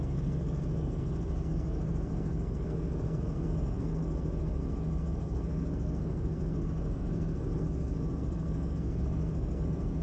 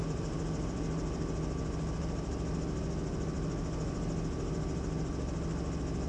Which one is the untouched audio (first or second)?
second